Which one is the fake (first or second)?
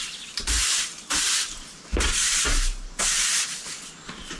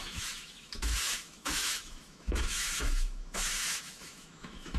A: second